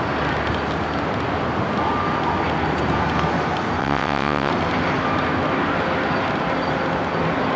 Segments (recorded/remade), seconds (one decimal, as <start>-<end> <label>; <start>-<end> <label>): 0.0-3.8 recorded; 3.8-4.5 remade; 4.5-7.6 recorded